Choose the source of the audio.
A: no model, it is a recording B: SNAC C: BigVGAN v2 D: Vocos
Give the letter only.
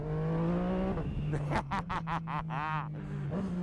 A